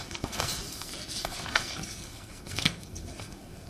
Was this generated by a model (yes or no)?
yes